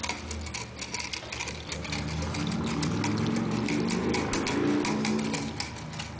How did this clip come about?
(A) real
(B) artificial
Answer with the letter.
A